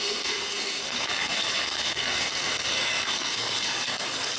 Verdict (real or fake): fake